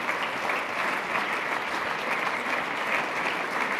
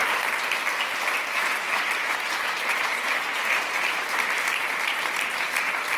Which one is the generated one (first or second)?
first